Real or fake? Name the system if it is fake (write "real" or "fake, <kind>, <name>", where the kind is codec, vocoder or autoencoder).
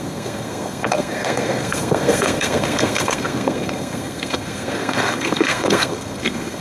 fake, codec, SNAC